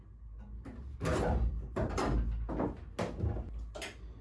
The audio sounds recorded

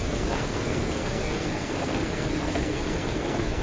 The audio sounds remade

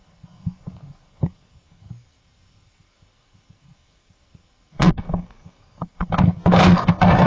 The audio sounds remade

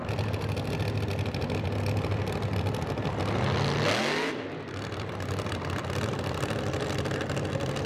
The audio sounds recorded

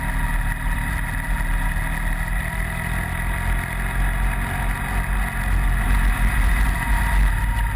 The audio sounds recorded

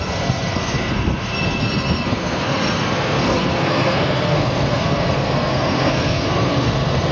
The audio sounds remade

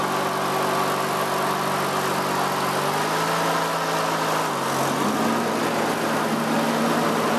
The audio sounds recorded